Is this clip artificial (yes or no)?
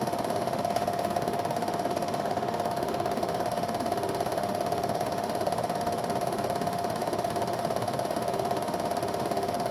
yes